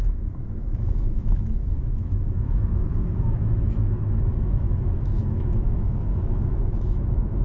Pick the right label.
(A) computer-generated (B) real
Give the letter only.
A